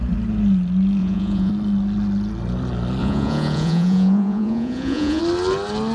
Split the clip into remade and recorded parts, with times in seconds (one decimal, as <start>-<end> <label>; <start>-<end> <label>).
0.0-1.0 recorded; 1.0-1.5 remade; 1.5-3.0 recorded; 3.0-5.2 remade; 5.2-5.9 recorded